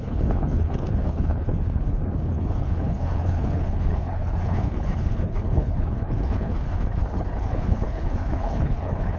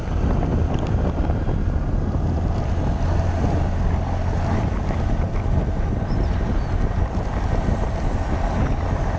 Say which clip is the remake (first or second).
first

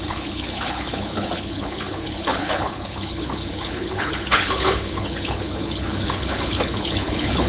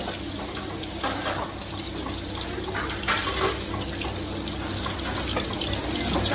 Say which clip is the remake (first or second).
first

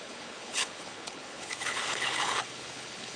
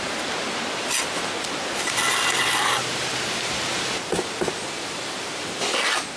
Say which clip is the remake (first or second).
first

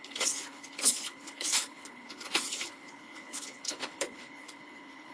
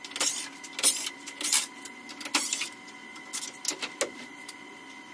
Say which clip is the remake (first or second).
first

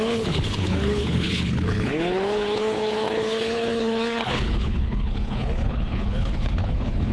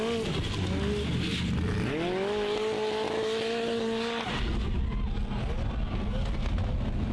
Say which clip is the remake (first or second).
first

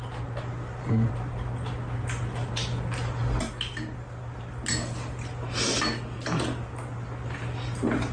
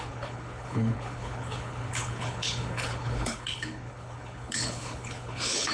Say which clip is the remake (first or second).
second